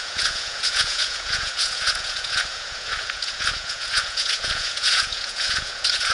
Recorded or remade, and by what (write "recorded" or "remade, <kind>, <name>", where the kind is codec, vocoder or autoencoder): remade, vocoder, Vocos